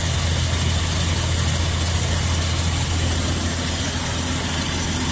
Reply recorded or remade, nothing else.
recorded